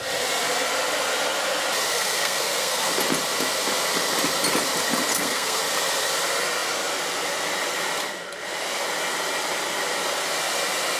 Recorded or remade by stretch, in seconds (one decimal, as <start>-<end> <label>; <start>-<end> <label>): 0.0-1.9 recorded; 1.9-2.9 remade; 2.9-5.1 recorded; 5.1-5.6 remade; 5.6-11.0 recorded